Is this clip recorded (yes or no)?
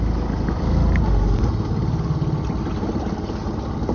yes